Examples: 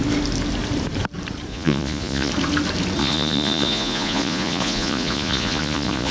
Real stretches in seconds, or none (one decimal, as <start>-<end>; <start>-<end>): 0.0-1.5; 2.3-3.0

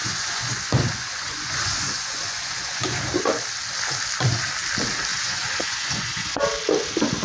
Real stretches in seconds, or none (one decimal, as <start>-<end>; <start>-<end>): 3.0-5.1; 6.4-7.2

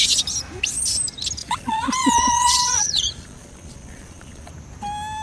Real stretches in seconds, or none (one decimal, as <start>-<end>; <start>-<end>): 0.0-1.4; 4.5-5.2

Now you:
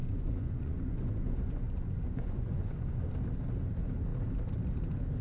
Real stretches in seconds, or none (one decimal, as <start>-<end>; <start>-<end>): 3.1-5.2

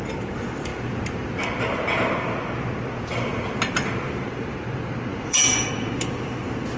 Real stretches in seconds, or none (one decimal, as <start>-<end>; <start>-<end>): 0.0-5.1; 5.9-6.8

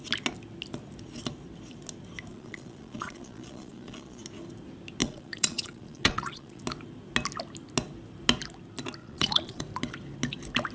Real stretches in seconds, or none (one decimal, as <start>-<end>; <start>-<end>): 0.0-2.3; 4.2-5.0; 6.6-9.0; 9.6-10.7

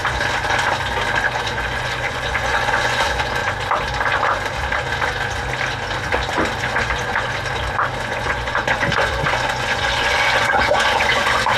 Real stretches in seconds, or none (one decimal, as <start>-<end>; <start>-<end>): 0.0-1.3; 3.4-6.6; 7.4-8.0